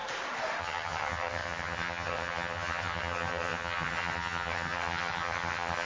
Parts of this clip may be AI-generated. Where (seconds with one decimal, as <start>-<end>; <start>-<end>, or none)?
0.6-5.9